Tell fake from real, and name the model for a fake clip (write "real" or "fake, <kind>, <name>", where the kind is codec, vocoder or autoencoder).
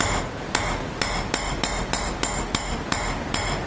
real